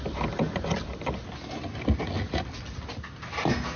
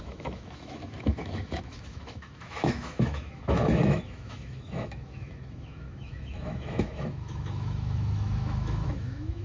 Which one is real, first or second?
first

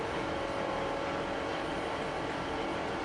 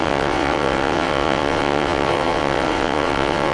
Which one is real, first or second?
first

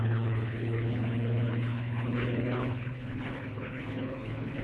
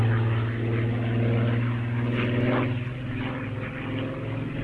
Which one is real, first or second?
second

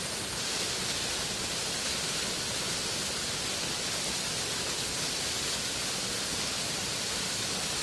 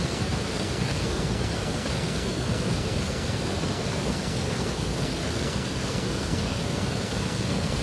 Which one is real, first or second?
first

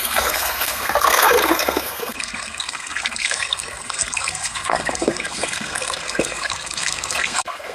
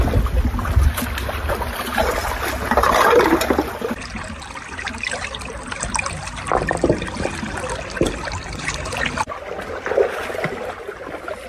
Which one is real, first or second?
second